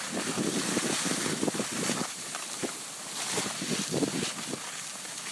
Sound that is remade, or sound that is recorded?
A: recorded